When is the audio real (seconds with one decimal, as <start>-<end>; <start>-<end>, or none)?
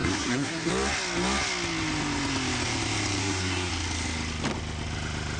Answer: 0.7-3.2; 3.7-5.4